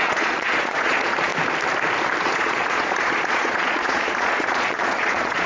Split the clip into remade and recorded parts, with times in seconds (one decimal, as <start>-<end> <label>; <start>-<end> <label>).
0.0-1.3 remade; 1.3-2.2 recorded; 2.2-5.5 remade